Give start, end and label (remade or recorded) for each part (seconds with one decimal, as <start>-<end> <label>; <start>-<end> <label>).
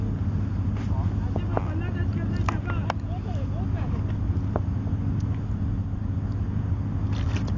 0.0-7.6 recorded